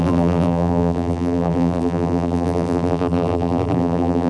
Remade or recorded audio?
remade